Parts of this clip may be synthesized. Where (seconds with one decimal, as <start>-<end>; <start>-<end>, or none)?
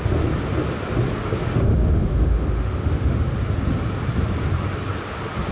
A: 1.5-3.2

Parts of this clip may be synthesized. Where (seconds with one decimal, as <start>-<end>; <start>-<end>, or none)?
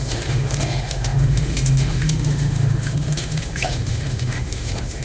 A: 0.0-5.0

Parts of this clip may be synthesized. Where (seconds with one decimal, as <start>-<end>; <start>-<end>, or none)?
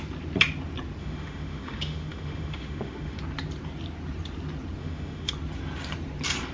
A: 1.0-3.2; 4.8-5.3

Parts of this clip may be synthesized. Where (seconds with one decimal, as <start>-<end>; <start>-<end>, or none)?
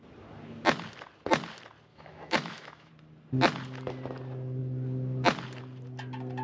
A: 1.9-2.9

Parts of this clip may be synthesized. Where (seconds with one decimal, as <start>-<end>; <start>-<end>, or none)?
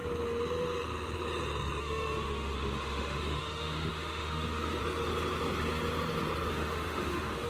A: 1.8-4.8; 6.5-7.5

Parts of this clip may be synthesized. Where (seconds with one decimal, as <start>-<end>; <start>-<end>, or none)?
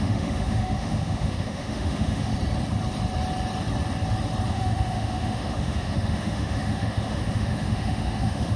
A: 0.0-2.3; 4.5-8.6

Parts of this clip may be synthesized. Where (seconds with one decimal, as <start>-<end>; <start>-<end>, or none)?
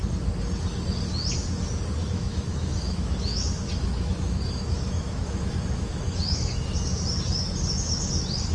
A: 2.0-6.7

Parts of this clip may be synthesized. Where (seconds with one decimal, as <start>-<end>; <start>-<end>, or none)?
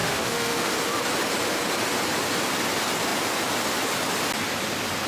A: 0.0-0.7